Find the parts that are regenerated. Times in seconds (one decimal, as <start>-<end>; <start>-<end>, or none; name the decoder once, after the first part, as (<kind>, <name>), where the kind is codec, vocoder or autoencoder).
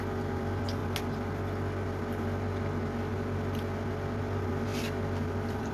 0.0-0.8 (vocoder, BigVGAN v2); 4.2-4.7; 5.3-5.7